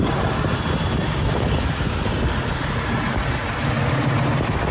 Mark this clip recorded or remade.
recorded